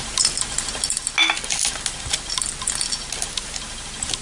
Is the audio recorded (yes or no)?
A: yes